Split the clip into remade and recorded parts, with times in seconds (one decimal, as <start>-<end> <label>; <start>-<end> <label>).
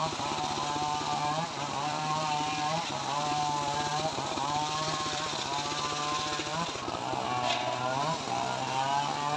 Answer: 0.0-3.4 remade; 3.4-3.9 recorded; 3.9-5.4 remade; 5.4-9.4 recorded